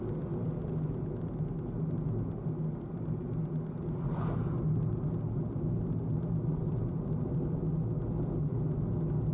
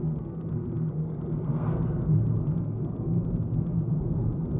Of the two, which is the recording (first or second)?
first